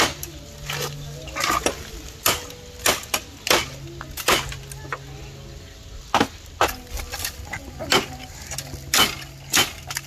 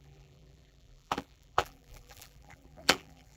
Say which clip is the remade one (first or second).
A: second